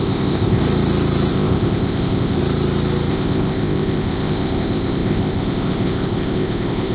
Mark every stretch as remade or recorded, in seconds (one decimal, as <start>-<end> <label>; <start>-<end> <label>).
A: 0.0-0.6 remade; 0.6-1.3 recorded; 1.3-2.4 remade; 2.4-3.1 recorded; 3.1-6.9 remade